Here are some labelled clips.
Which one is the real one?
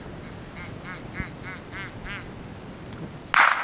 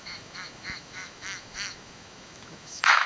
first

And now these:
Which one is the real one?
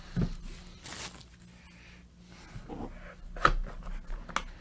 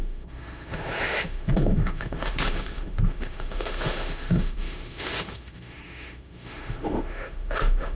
first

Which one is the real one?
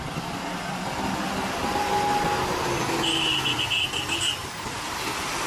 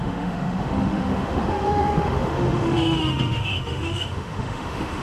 first